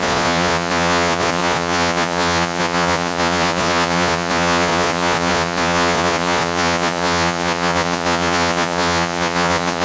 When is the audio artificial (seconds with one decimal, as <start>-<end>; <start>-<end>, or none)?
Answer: 0.0-9.8